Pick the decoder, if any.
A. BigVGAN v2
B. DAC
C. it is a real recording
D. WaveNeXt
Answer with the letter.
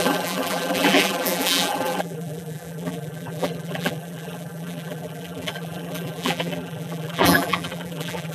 A